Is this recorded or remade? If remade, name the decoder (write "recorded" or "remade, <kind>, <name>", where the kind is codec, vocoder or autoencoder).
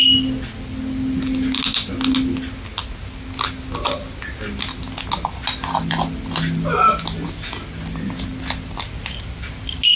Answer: recorded